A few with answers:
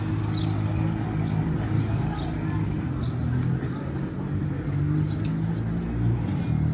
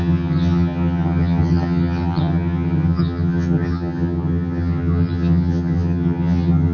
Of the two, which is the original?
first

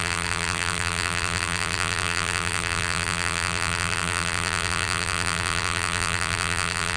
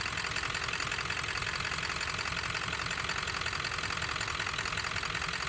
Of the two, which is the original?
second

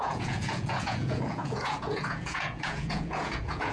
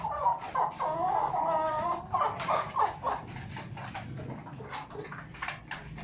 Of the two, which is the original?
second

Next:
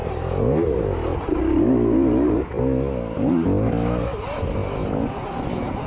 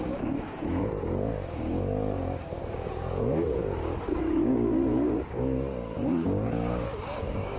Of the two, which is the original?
first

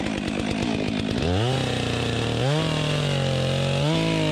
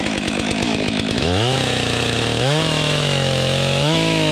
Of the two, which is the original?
first